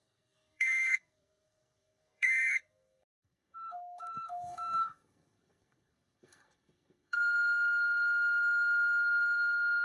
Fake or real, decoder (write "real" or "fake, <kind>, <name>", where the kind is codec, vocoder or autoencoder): fake, codec, SNAC